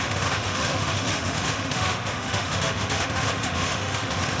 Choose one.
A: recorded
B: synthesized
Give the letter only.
B